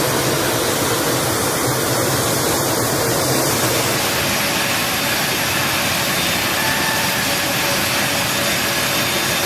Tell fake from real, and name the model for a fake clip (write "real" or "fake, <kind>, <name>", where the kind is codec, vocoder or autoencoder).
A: real